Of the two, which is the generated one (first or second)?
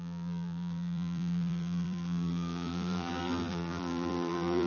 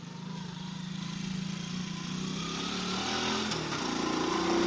first